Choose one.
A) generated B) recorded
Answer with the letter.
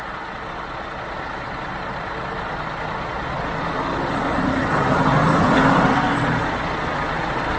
B